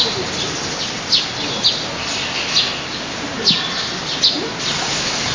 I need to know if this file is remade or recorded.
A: recorded